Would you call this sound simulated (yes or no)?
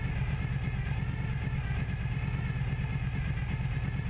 no